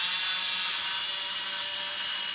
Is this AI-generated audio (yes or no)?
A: no